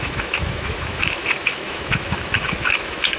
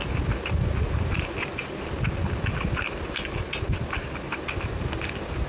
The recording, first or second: second